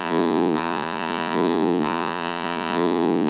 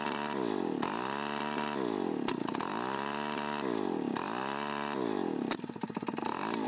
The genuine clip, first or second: second